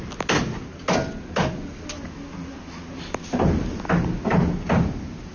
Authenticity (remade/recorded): recorded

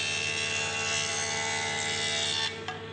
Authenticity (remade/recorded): recorded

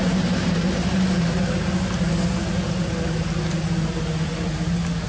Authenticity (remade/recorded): recorded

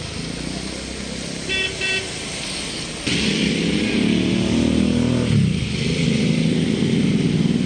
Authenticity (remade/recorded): recorded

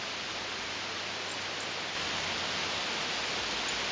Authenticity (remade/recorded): recorded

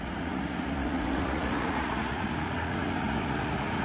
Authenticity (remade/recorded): remade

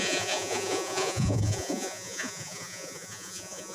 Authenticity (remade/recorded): remade